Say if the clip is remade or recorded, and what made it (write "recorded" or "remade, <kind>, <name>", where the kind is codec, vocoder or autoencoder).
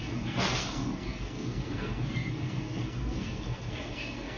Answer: remade, codec, SNAC